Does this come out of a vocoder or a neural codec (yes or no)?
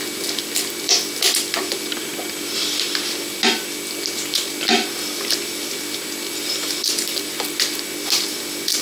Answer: no